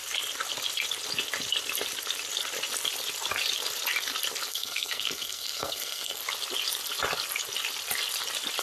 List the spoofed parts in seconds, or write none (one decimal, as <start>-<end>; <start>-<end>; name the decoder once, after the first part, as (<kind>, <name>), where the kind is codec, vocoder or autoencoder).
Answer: 4.5-6.2 (codec, SNAC)

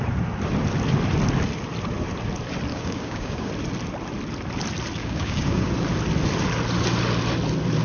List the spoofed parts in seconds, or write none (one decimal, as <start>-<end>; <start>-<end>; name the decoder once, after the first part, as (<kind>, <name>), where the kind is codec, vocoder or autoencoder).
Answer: 2.7-3.5 (codec, DAC); 5.0-5.7

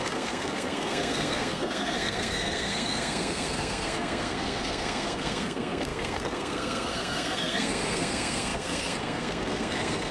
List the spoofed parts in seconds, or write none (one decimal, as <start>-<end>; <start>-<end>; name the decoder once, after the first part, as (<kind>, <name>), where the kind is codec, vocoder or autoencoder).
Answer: 0.0-10.1 (codec, SNAC)

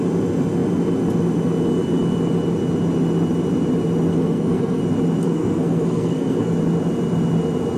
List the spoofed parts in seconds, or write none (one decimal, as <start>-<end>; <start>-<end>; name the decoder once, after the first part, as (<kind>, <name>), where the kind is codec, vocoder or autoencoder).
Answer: 4.1-4.8 (codec, SNAC); 5.2-6.5

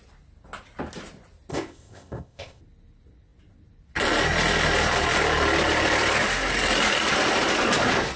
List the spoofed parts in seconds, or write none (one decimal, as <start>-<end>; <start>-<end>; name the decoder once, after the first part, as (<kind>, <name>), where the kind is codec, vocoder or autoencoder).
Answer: 1.5-2.6 (codec, ZipCodec)

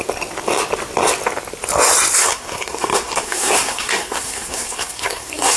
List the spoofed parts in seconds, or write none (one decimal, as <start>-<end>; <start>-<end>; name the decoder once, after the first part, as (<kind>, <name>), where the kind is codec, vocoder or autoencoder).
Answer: 2.2-5.6 (codec, SNAC)

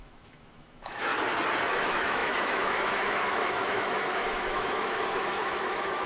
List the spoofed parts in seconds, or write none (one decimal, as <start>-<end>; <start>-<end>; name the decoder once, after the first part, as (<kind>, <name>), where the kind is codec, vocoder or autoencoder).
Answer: 0.0-1.1 (autoencoder, DAC-VAE); 1.7-6.1

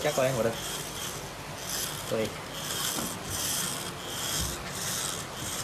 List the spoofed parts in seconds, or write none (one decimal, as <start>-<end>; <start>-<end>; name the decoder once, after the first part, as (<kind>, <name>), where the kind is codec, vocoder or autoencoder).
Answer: none